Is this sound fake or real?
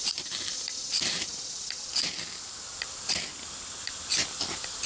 real